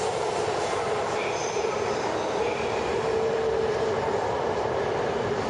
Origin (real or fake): fake